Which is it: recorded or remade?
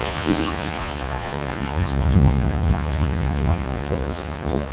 remade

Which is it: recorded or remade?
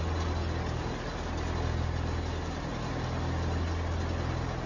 recorded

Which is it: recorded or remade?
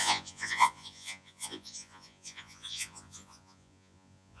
remade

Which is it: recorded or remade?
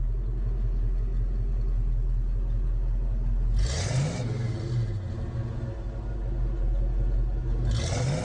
recorded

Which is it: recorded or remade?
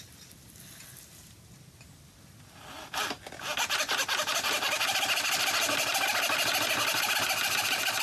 recorded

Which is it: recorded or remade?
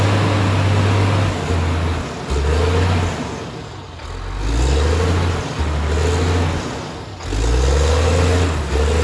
recorded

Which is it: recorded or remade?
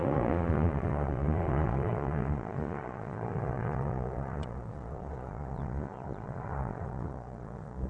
remade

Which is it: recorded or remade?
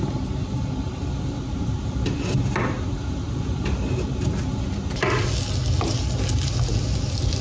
recorded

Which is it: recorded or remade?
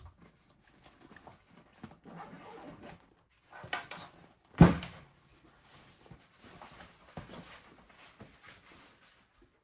recorded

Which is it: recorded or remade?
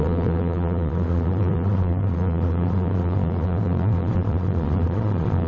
remade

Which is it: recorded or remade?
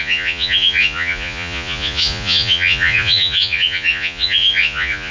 remade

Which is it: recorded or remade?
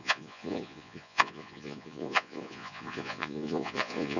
remade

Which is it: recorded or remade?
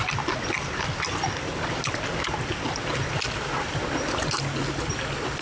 recorded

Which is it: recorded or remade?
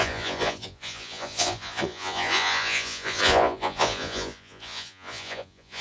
remade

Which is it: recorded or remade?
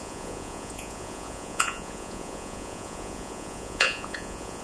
remade